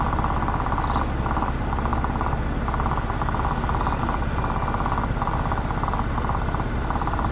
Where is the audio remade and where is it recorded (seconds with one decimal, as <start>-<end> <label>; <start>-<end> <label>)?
0.0-7.3 recorded